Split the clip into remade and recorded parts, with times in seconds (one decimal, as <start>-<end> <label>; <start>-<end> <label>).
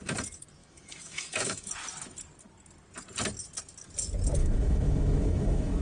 0.0-0.6 recorded; 0.6-1.7 remade; 1.7-4.4 recorded; 4.4-5.8 remade